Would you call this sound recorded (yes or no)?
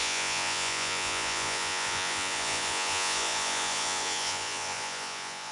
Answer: no